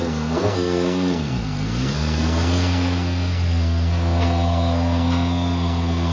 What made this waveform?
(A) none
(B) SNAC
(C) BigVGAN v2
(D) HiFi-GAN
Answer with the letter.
B